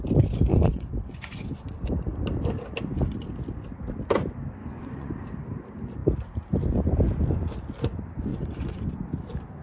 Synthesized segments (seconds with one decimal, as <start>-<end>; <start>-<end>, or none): 0.5-1.5; 4.6-5.1; 8.3-8.9